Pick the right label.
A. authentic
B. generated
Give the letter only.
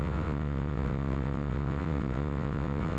B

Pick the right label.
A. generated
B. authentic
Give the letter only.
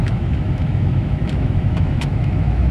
A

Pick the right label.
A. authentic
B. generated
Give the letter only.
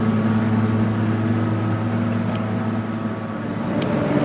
A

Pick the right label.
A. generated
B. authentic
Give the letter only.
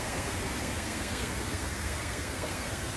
A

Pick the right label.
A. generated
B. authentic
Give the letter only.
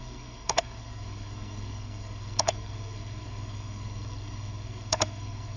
A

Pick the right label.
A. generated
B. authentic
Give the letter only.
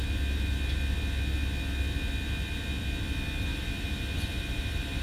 B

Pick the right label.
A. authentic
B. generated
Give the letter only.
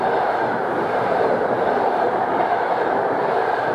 B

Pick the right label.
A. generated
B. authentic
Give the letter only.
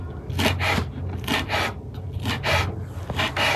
B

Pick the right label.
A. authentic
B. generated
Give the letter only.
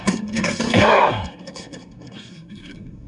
B